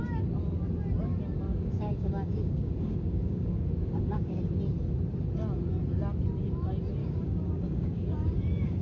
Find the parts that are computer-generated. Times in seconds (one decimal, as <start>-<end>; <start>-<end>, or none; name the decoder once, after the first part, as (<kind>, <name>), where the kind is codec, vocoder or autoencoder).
1.5-4.4 (codec, DAC); 7.0-8.8